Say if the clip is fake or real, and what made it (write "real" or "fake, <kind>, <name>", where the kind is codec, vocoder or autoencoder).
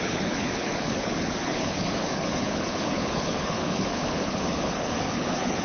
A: fake, codec, HILCodec